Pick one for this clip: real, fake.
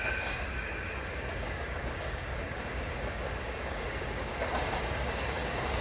fake